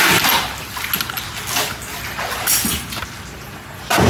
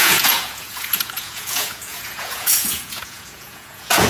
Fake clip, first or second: second